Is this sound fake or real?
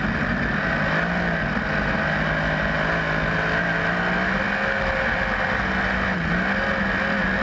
real